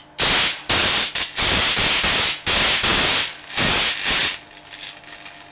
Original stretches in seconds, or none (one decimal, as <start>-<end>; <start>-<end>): 0.0-0.8; 1.6-2.9; 3.7-5.5